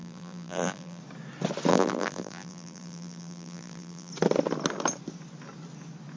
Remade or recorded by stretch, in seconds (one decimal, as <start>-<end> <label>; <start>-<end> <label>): 0.0-1.0 remade; 1.0-1.7 recorded; 1.7-4.1 remade; 4.1-6.2 recorded